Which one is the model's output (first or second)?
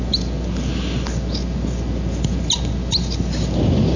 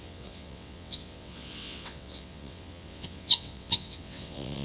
second